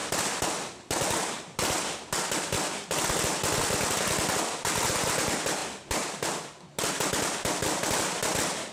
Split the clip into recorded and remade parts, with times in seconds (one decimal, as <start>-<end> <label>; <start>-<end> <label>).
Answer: 0.0-8.7 recorded